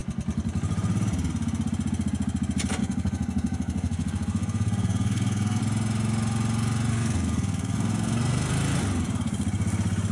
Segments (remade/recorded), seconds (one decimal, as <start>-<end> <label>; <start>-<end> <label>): 0.0-2.8 recorded; 2.8-5.6 remade; 5.6-6.9 recorded; 6.9-8.5 remade; 8.5-10.1 recorded